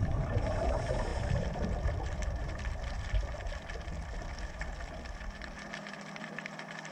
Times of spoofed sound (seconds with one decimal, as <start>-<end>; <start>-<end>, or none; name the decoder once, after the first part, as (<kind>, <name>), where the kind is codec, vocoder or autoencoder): 1.1-5.2 (vocoder, BigVGAN v2)